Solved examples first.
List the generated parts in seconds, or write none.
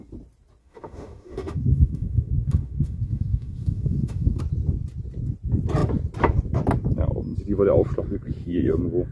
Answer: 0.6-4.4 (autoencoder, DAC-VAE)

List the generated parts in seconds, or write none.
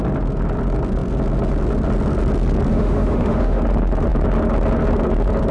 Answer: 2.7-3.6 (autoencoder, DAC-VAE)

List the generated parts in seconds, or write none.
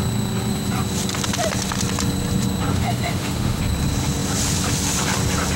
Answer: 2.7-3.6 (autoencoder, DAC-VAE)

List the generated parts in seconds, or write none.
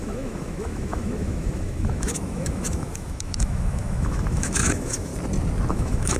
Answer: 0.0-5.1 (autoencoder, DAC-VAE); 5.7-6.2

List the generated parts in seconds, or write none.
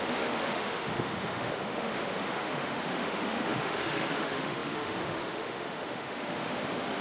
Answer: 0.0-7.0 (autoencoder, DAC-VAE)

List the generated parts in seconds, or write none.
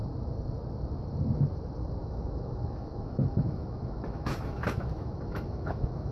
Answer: 2.0-6.1 (autoencoder, DAC-VAE)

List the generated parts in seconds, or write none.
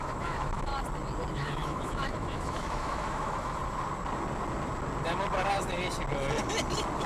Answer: 0.0-0.7 (autoencoder, DAC-VAE); 1.3-3.6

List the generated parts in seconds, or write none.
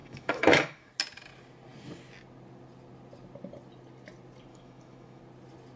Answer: 0.0-0.9 (autoencoder, DAC-VAE); 4.5-5.2